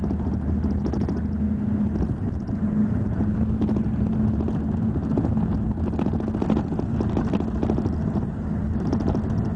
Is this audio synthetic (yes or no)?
no